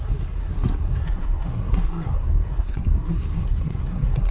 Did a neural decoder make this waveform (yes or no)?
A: yes